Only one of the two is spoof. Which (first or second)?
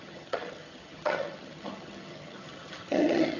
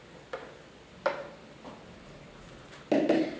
first